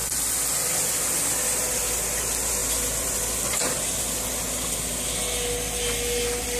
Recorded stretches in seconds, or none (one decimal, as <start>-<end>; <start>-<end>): 1.0-2.6; 3.7-6.6